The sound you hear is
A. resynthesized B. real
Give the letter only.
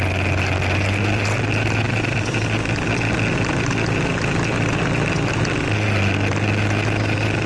B